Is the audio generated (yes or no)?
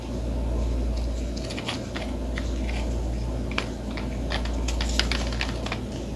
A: no